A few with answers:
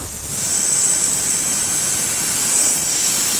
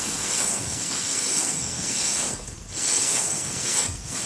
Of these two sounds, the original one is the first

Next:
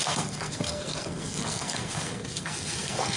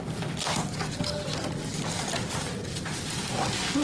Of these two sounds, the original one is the second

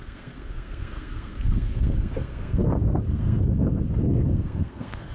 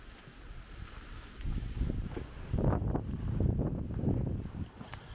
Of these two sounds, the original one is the second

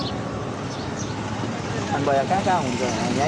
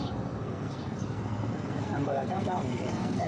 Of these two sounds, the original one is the first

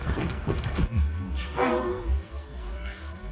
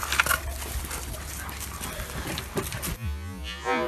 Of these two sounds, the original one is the second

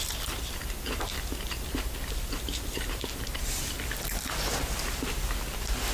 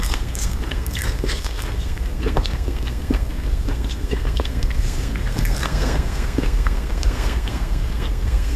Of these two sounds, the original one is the first